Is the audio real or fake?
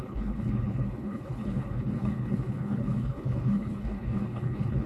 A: fake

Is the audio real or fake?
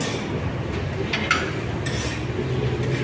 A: real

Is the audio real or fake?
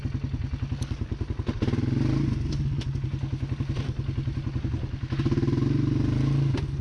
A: real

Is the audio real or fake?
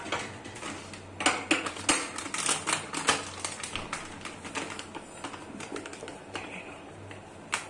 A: real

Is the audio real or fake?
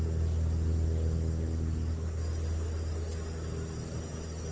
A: real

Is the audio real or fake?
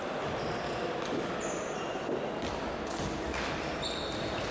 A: real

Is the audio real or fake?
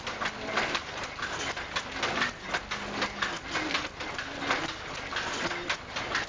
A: real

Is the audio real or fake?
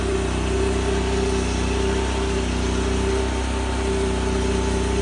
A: real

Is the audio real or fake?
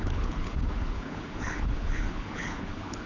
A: fake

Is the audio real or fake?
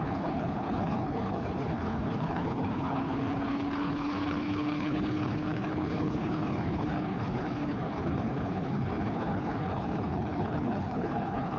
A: fake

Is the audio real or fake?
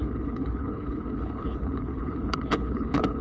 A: fake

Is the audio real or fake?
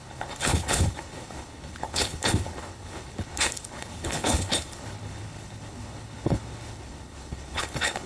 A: fake